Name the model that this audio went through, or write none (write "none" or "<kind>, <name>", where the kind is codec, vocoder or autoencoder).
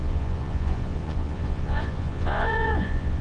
vocoder, Vocos